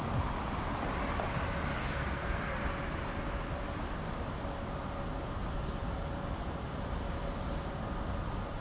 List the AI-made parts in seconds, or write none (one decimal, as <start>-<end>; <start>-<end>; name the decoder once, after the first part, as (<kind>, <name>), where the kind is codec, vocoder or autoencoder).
1.8-2.6 (codec, SNAC)